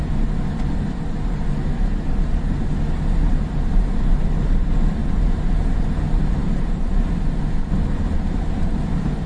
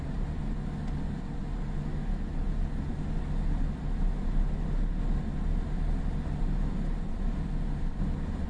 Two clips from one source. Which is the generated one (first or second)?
first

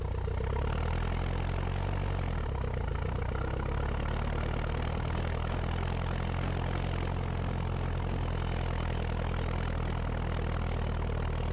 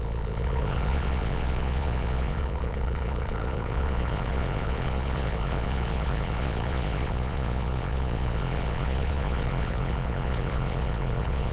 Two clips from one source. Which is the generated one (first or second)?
second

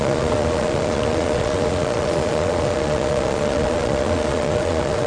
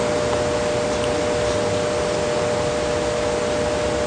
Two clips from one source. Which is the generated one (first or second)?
first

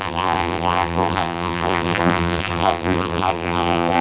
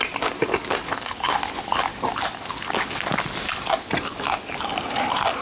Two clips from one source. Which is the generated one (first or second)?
first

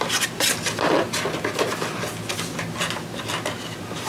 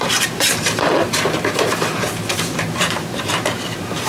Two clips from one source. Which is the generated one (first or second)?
second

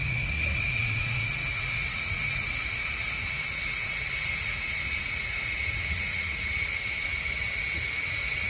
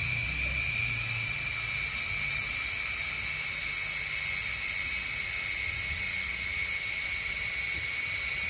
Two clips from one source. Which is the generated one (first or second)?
first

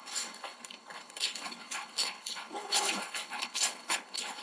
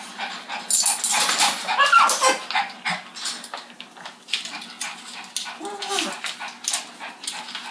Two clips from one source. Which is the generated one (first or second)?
first